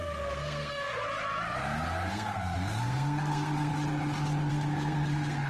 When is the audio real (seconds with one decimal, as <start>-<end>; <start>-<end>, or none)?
0.9-2.1; 3.7-4.5